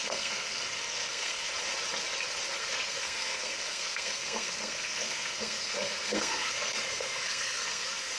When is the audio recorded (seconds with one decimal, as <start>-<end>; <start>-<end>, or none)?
1.5-2.6